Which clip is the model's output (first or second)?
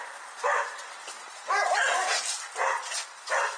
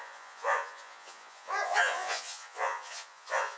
second